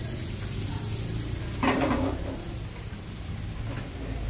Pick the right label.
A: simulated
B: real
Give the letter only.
B